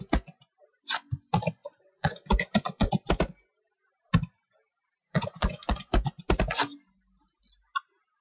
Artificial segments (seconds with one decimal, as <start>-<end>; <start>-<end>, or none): 1.6-2.9; 5.0-6.1